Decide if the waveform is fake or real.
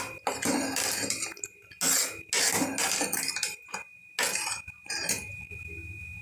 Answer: real